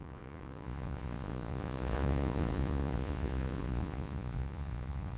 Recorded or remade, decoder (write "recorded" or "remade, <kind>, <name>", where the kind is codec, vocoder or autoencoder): remade, vocoder, Vocos